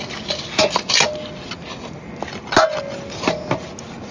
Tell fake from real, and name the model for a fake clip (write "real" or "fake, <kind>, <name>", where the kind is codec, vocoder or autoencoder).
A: real